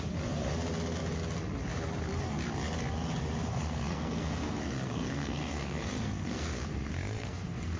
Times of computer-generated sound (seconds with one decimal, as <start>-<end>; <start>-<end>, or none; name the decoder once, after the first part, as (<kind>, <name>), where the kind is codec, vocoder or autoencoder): 3.5-7.8 (codec, SNAC)